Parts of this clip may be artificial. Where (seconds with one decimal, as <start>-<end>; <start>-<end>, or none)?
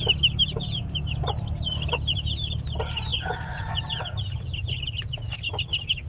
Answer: 3.1-3.8